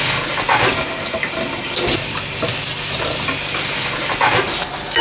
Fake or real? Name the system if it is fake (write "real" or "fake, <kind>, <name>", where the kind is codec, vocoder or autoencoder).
real